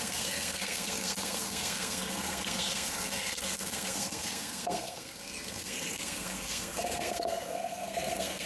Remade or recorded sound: remade